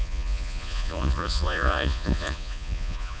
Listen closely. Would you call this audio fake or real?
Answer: fake